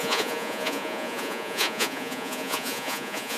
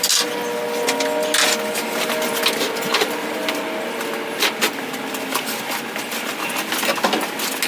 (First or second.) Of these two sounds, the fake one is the first